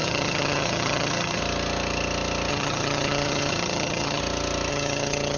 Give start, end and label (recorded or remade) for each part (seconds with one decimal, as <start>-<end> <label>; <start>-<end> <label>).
0.0-1.4 remade; 1.4-2.5 recorded; 2.5-4.2 remade; 4.2-4.7 recorded; 4.7-5.4 remade